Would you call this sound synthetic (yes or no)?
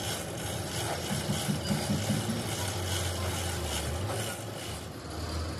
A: no